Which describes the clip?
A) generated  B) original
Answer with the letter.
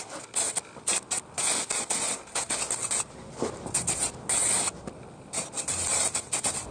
B